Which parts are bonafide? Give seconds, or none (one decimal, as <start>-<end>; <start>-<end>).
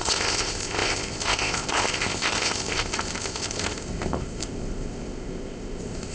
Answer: none